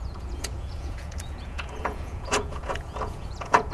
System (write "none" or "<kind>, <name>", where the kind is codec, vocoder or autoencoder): vocoder, Vocos